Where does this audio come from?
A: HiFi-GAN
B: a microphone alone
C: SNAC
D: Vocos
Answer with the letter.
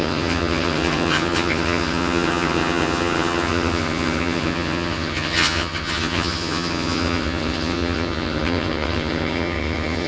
A